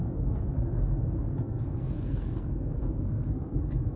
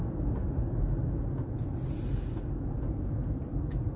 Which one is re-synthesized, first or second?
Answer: first